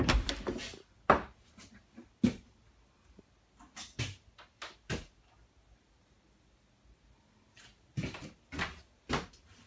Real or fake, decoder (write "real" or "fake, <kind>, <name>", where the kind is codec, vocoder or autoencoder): real